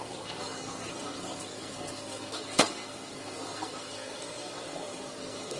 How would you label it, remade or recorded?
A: remade